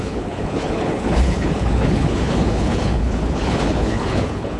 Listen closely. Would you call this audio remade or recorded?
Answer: remade